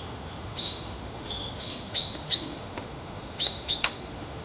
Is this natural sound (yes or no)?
no